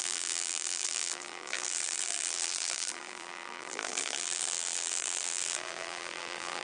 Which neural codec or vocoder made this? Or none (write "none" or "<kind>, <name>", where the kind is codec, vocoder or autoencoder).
vocoder, BigVGAN v2